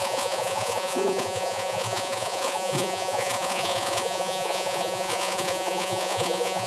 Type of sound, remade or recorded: remade